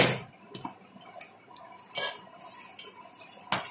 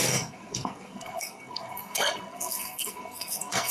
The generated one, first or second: second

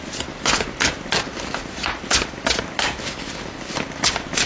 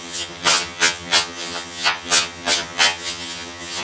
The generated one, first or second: second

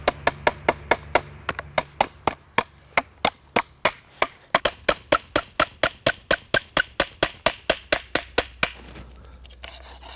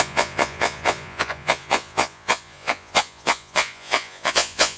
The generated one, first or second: second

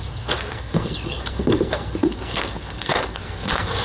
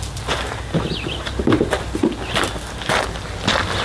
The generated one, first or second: first